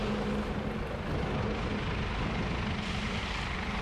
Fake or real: real